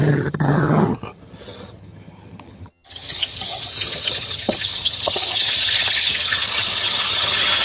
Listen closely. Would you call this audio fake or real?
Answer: fake